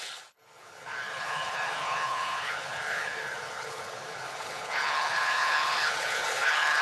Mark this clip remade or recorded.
remade